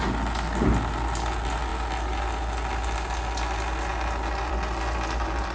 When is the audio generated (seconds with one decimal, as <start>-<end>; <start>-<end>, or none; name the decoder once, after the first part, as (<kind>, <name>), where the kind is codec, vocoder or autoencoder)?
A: none